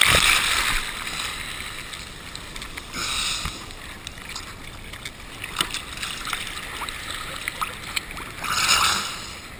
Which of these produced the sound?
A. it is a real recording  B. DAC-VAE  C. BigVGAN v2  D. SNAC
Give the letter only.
A